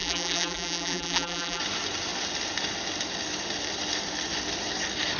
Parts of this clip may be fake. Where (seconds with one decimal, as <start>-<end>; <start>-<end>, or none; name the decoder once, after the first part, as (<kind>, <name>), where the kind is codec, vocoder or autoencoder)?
0.0-1.6 (vocoder, BigVGAN v2)